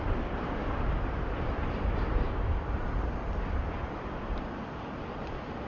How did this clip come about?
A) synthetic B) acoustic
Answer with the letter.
B